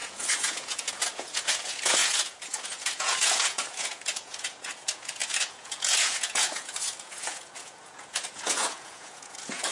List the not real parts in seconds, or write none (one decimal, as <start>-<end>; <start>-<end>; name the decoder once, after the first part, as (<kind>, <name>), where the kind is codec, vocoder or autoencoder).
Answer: 0.0-9.7 (vocoder, Vocos)